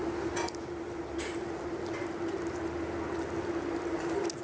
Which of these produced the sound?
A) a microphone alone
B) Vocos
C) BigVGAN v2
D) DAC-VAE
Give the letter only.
A